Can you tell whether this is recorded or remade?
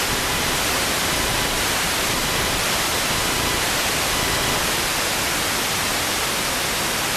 recorded